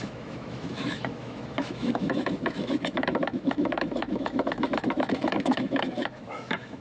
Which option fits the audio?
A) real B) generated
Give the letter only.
B